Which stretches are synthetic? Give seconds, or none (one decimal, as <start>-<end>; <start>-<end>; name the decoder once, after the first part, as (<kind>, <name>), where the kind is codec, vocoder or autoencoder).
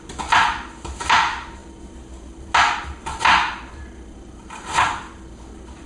none